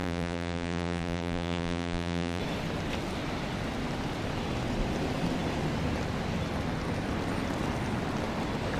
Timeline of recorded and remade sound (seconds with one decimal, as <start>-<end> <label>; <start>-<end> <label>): 0.0-2.4 remade; 2.4-8.8 recorded